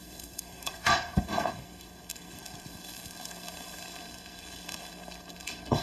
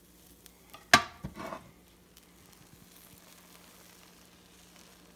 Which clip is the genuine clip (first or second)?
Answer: second